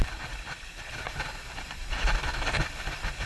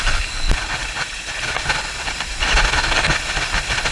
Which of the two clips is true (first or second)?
second